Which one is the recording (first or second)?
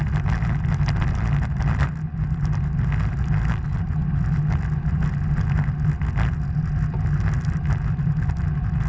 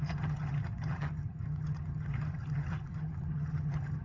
first